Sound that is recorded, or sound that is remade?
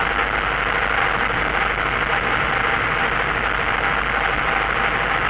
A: recorded